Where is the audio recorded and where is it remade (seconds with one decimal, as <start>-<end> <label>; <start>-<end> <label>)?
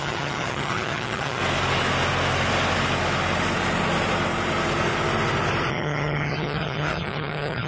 0.0-1.4 remade; 1.4-5.7 recorded; 5.7-7.7 remade